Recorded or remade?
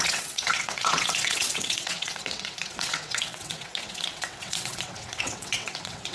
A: remade